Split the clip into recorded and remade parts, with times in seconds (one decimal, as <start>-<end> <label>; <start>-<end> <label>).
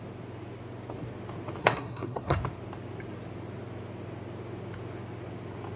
0.0-1.6 recorded; 1.6-2.4 remade; 2.4-5.8 recorded